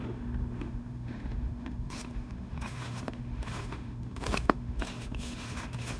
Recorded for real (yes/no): no